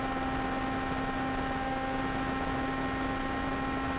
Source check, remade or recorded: recorded